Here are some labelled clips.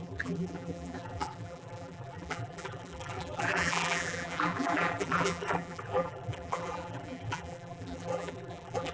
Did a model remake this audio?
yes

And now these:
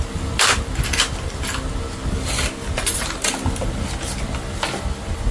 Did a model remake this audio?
no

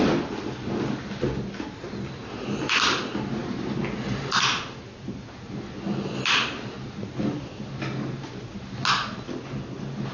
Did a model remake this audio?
no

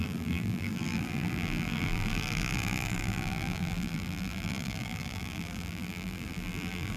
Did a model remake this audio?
yes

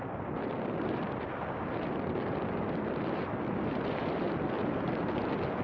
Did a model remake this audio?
no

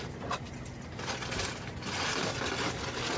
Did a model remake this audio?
no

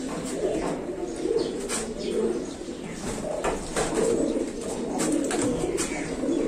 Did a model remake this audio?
no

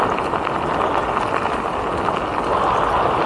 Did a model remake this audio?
no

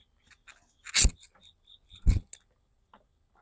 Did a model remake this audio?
no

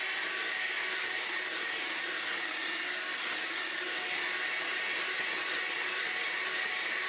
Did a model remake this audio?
no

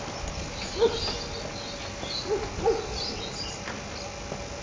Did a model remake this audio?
no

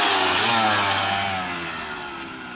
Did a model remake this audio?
no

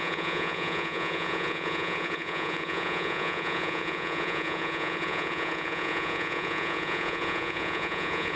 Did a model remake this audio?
yes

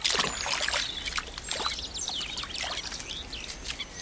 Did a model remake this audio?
no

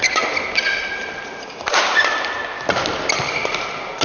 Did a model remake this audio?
no